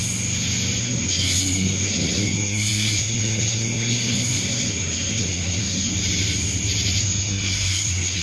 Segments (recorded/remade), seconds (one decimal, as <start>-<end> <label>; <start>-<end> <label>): 0.0-0.8 recorded; 0.8-5.9 remade; 5.9-7.0 recorded; 7.0-8.2 remade